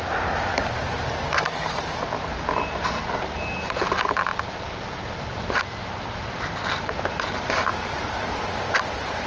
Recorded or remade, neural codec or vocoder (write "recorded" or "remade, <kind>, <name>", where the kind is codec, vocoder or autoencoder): remade, vocoder, BigVGAN v2